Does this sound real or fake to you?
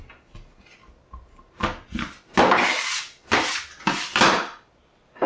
real